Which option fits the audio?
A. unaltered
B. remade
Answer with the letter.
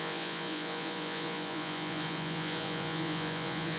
B